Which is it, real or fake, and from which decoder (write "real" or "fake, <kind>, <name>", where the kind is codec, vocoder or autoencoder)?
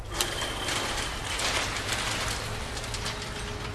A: real